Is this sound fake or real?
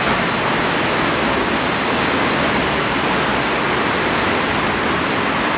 real